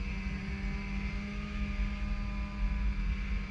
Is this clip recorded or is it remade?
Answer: recorded